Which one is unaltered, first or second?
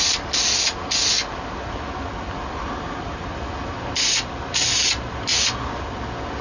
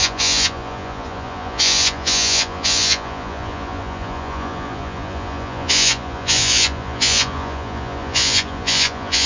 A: first